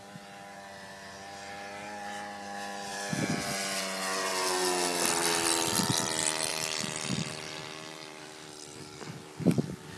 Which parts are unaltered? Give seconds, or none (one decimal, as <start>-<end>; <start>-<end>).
0.0-10.0